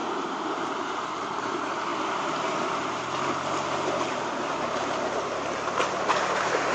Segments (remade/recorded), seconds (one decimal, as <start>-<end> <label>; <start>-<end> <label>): 0.0-1.5 remade; 1.5-6.7 recorded